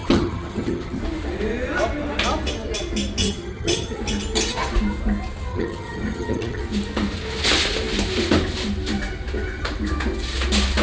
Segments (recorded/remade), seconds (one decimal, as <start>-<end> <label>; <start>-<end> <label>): 0.0-1.0 remade; 1.0-3.2 recorded; 3.2-4.0 remade; 4.0-5.5 recorded; 5.5-6.6 remade; 6.6-10.8 recorded